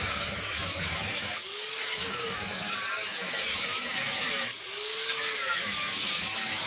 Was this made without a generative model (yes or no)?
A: no